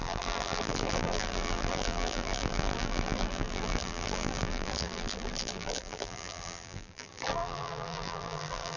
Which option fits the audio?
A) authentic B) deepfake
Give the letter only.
B